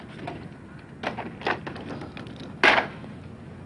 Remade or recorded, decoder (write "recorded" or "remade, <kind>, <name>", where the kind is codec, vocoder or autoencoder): recorded